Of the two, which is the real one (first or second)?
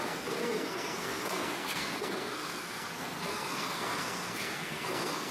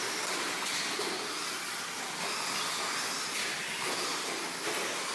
second